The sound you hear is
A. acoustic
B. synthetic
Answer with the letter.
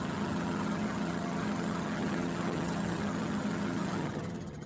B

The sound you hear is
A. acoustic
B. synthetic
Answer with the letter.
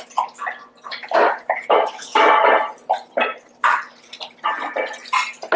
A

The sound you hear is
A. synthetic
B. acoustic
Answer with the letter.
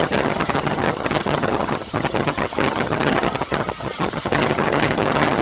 A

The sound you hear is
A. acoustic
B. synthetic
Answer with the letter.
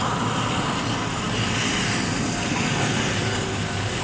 A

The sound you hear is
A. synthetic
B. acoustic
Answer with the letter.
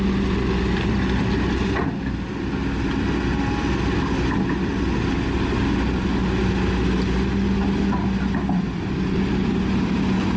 B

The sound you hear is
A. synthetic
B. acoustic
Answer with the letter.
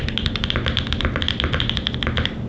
B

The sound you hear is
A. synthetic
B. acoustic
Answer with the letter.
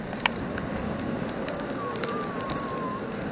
B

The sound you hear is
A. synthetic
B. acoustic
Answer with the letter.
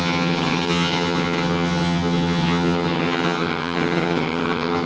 A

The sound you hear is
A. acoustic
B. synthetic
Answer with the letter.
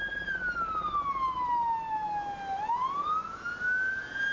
A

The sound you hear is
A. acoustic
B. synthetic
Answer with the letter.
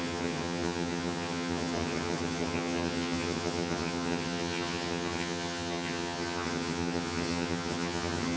B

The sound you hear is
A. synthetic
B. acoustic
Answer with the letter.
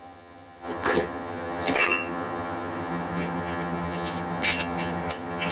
A